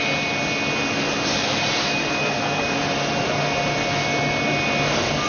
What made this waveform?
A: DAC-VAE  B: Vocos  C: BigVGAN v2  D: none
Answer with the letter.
D